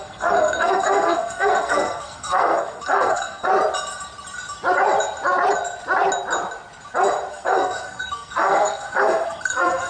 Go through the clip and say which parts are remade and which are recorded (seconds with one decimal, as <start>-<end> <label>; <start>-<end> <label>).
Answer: 0.0-3.5 remade; 3.5-7.3 recorded; 7.3-9.9 remade